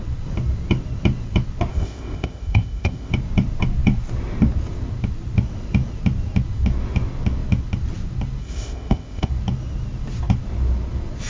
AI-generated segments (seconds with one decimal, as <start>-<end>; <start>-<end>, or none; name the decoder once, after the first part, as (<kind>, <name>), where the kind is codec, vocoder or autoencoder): 1.7-3.1 (codec, ZipCodec); 8.4-9.3